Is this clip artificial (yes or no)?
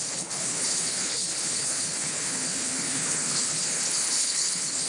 yes